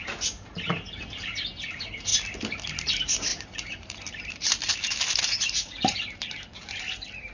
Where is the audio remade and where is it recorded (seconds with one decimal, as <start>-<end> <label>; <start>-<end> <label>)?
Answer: 0.0-2.1 remade; 2.1-2.9 recorded; 2.9-7.3 remade